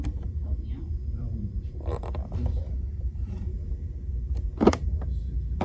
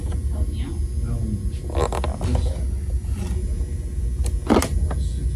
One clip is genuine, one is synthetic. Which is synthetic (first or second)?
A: first